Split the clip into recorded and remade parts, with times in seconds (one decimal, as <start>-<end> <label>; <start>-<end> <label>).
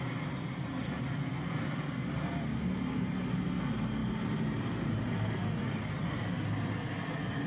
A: 0.0-7.5 recorded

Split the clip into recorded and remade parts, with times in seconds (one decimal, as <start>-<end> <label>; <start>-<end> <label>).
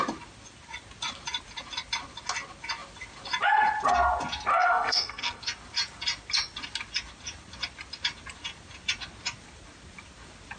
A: 0.0-4.5 recorded; 4.5-5.4 remade; 5.4-10.6 recorded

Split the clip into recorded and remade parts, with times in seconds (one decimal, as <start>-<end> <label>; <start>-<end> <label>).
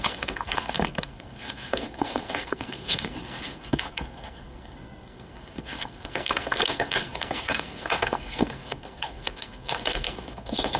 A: 0.0-10.8 remade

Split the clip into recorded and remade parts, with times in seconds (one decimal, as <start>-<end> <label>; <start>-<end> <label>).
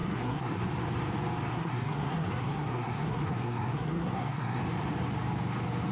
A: 0.0-0.6 remade; 0.6-1.5 recorded; 1.5-4.6 remade; 4.6-5.9 recorded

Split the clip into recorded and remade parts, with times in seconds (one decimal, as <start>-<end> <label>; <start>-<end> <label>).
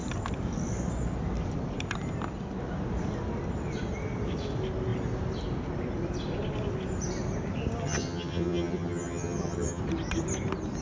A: 0.0-7.8 recorded; 7.8-9.8 remade; 9.8-10.8 recorded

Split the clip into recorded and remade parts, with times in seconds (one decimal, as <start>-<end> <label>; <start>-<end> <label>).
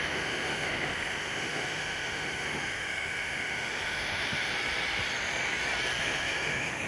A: 0.0-4.5 remade; 4.5-6.0 recorded; 6.0-6.9 remade